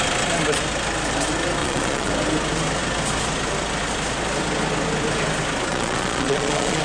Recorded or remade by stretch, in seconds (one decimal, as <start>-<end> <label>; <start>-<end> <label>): 0.0-1.6 recorded; 1.6-2.1 remade; 2.1-5.7 recorded; 5.7-6.8 remade